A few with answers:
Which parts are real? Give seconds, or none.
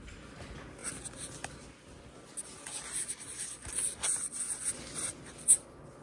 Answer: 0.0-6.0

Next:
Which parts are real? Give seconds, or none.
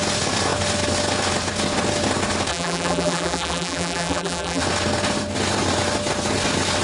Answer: 0.0-2.5; 4.6-6.8